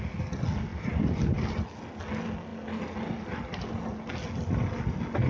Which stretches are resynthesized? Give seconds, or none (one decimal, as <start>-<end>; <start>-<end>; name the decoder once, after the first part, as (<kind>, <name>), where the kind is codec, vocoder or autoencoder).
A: 0.7-1.4 (vocoder, BigVGAN v2); 2.5-4.0